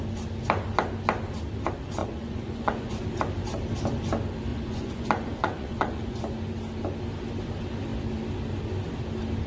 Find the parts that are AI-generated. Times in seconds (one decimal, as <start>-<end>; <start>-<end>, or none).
2.0-3.0; 4.5-6.2